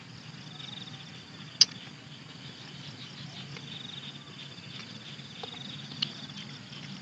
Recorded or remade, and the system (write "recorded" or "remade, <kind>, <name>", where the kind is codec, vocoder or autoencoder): recorded